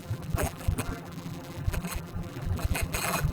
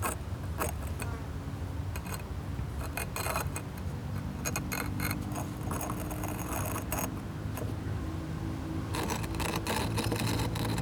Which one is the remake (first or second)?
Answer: first